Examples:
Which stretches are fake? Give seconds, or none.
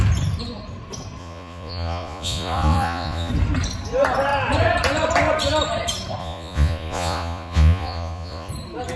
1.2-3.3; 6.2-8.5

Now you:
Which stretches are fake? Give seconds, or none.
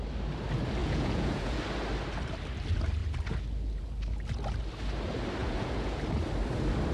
0.8-1.6; 5.4-6.0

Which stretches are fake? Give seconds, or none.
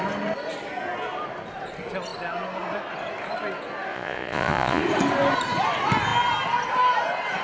3.9-4.8